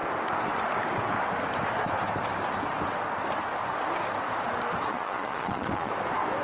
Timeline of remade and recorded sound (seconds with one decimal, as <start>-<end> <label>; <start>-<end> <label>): 0.0-4.9 recorded; 4.9-5.9 remade; 5.9-6.4 recorded